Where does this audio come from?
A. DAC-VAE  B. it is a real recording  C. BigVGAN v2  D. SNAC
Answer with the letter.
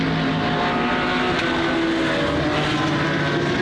B